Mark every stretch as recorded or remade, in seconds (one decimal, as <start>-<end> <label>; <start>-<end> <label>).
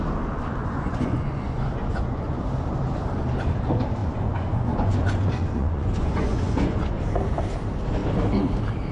0.0-0.6 recorded; 0.6-2.4 remade; 2.4-4.0 recorded; 4.0-7.0 remade; 7.0-8.9 recorded